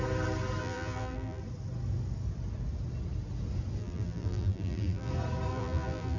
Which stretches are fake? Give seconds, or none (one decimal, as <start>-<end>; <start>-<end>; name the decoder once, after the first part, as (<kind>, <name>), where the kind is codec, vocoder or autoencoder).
0.6-1.4 (vocoder, BigVGAN v2); 3.8-5.1; 5.5-6.2

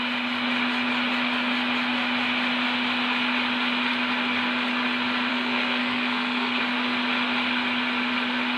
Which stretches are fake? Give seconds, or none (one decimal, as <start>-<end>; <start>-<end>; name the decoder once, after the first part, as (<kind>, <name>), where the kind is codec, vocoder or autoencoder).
5.3-6.6 (codec, SNAC)

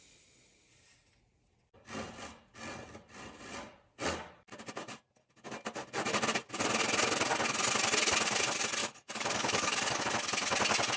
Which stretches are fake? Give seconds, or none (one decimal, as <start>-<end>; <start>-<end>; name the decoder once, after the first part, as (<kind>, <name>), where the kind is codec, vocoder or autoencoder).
8.8-10.0 (codec, DAC)

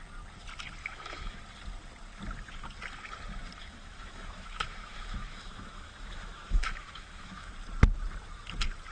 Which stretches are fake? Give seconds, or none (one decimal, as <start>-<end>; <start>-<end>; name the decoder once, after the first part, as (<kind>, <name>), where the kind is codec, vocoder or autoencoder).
0.8-1.4 (autoencoder, DAC-VAE); 3.6-7.5

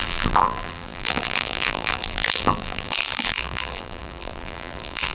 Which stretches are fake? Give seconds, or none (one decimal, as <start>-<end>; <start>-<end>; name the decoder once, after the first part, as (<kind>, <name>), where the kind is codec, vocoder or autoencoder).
0.0-5.1 (vocoder, BigVGAN v2)